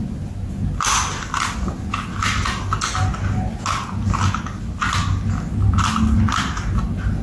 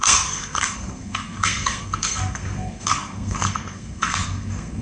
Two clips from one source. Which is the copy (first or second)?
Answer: second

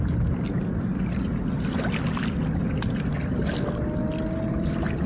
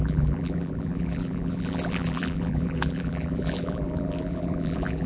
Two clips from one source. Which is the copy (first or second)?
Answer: second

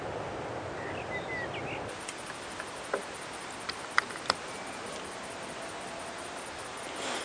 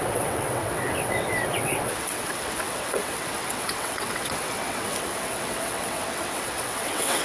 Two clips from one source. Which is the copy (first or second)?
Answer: second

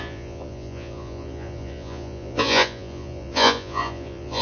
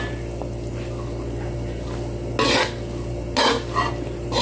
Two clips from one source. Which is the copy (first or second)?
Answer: first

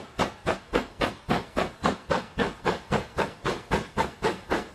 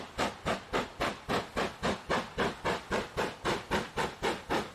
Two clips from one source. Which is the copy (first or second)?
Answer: first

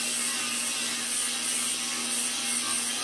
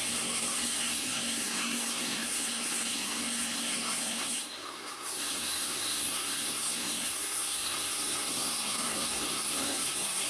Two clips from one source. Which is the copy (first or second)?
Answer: second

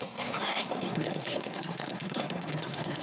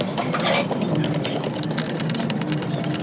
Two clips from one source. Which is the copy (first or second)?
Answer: first